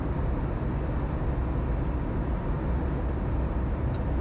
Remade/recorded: recorded